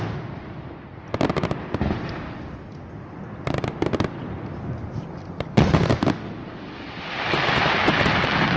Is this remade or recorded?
recorded